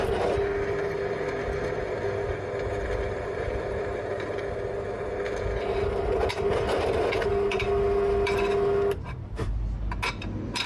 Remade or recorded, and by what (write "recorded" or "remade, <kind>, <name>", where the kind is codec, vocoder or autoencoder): recorded